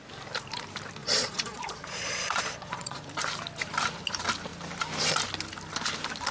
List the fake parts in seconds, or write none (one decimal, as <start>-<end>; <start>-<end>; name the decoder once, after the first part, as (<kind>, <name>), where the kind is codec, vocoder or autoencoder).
1.0-3.0 (vocoder, Vocos)